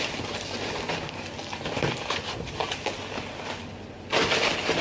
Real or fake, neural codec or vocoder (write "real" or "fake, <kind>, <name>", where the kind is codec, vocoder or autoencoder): real